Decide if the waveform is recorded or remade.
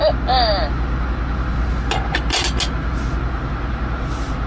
recorded